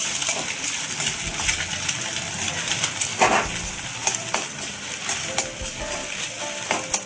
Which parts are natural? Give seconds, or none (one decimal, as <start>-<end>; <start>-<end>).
1.1-2.6; 3.1-3.8; 6.0-7.1

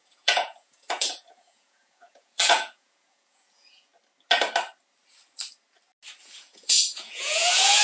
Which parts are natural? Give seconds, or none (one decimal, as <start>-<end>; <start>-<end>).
3.9-6.2

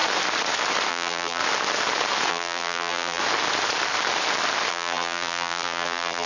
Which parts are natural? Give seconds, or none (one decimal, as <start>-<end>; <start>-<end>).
0.0-0.9; 1.4-2.3; 3.2-4.7

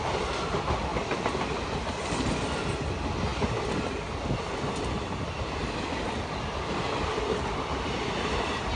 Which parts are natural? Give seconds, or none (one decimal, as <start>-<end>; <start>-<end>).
0.0-0.9; 1.6-8.8